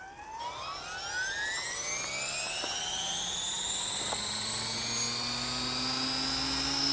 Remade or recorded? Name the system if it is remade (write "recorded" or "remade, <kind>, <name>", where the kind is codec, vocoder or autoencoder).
recorded